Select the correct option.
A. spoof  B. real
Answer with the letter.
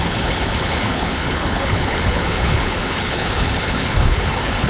A